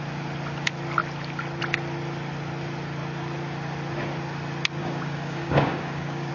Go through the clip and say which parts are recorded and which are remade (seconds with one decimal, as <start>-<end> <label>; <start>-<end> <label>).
0.0-4.8 recorded; 4.8-6.3 remade